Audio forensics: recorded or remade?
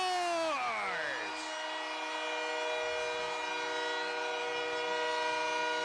recorded